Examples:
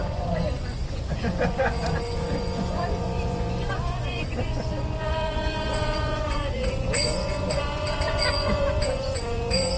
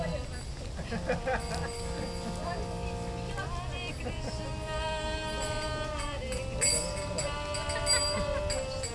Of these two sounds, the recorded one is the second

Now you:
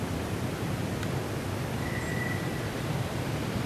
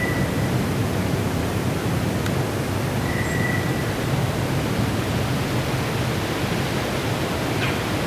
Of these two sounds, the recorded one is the second